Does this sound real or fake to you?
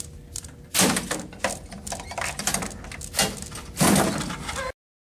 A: real